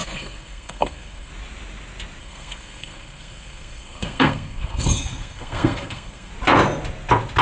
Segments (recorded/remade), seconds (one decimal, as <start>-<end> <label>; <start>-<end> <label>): 0.0-1.3 remade; 1.3-2.2 recorded; 2.2-6.3 remade; 6.3-7.4 recorded